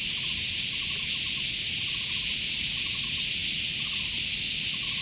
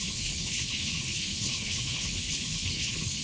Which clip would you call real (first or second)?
first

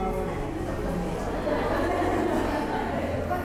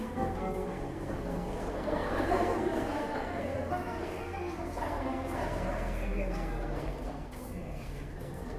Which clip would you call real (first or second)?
first